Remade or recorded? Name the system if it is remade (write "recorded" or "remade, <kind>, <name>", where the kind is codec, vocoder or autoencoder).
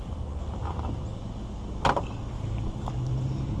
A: recorded